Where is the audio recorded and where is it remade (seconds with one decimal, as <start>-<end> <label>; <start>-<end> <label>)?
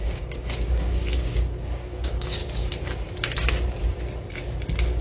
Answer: 0.0-2.4 remade; 2.4-5.0 recorded